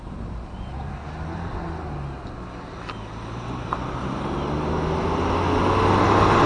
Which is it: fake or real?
real